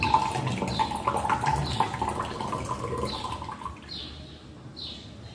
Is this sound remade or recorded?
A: recorded